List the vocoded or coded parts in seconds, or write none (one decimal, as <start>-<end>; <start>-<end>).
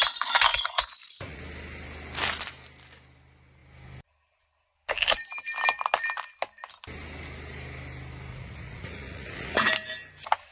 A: 0.5-1.4; 8.3-9.7